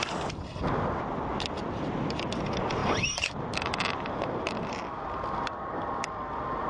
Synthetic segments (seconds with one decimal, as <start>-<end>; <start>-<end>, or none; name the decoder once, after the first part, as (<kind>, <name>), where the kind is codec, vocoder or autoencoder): none

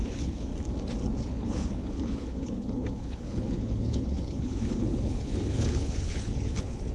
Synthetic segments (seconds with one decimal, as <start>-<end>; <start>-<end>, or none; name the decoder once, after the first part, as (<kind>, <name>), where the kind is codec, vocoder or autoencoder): 0.0-0.5 (codec, HILCodec); 1.2-6.9

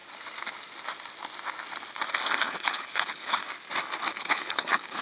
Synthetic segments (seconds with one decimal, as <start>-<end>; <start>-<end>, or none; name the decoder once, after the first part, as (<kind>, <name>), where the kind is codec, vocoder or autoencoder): 2.4-3.4 (codec, HILCodec); 4.2-5.0

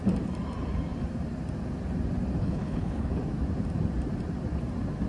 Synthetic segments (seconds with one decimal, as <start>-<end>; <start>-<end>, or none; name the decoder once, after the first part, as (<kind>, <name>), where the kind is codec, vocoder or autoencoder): 2.4-3.1 (codec, HILCodec)

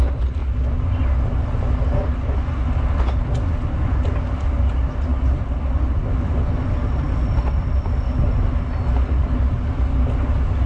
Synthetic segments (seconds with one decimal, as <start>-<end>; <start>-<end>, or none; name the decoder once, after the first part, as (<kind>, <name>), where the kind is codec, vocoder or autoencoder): none

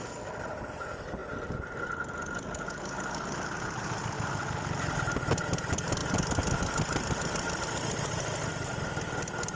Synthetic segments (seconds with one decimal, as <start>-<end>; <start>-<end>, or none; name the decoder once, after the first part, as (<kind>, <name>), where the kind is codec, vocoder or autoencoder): none

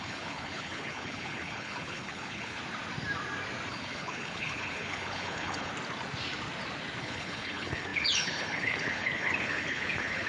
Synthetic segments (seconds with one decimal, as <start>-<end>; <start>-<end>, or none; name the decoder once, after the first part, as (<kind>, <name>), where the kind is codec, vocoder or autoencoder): 0.0-2.6 (codec, HILCodec); 3.7-5.7; 7.0-10.3

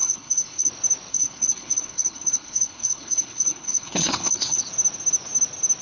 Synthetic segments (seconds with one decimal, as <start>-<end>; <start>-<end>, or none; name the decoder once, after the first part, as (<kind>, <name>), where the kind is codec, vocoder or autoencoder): 0.0-0.7 (codec, HILCodec); 1.1-4.6